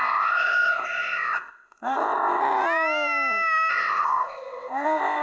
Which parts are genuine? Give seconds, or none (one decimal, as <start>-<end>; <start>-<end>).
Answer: 2.4-3.7